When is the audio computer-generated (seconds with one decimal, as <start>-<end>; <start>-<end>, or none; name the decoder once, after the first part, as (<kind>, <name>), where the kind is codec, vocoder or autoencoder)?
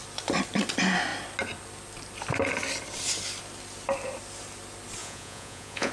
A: 5.0-5.9 (vocoder, Vocos)